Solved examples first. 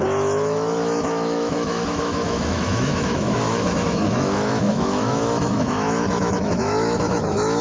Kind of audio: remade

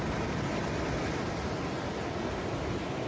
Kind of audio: recorded